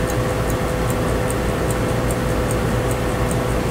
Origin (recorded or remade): recorded